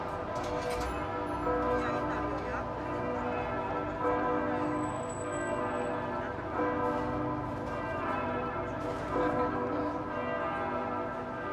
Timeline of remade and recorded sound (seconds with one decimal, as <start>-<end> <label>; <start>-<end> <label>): 0.0-7.5 recorded; 7.5-10.0 remade; 10.0-11.5 recorded